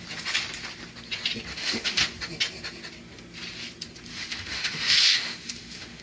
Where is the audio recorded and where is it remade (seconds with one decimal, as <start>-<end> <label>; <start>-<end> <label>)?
0.0-1.5 recorded; 1.5-2.0 remade; 2.0-4.1 recorded; 4.1-6.0 remade